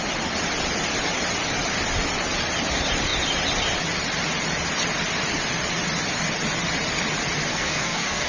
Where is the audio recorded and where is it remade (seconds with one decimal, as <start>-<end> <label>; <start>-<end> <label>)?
0.0-7.5 recorded; 7.5-8.3 remade